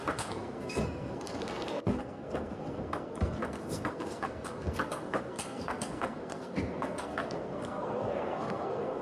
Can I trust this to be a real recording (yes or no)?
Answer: no